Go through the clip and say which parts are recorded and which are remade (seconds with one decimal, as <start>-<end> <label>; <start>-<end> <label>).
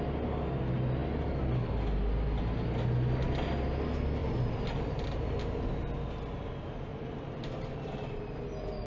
0.0-6.9 recorded; 6.9-8.2 remade; 8.2-8.9 recorded